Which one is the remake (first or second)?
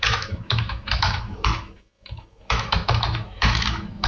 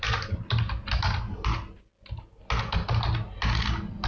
first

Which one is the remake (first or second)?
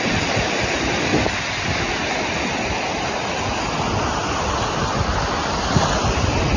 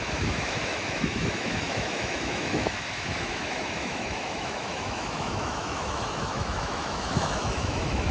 second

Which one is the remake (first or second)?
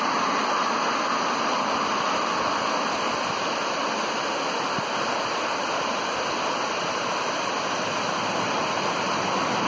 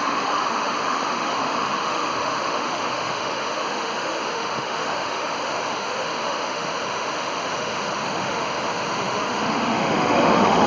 second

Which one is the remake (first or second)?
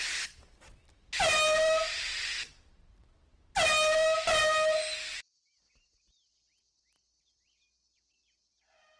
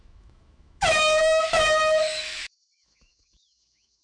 second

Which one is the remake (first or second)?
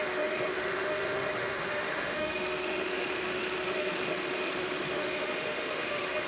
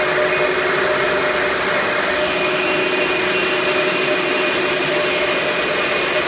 first